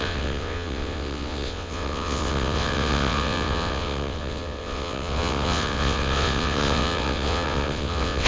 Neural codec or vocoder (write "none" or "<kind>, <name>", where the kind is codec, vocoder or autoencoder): vocoder, WaveNeXt